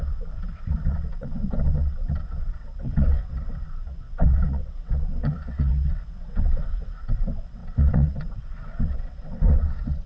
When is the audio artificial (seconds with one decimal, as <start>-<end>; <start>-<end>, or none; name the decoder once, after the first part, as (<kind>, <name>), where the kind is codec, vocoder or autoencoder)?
0.0-10.1 (vocoder, WaveNeXt)